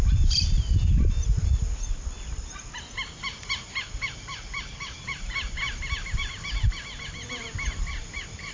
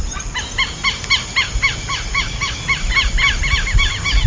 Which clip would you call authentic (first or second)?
second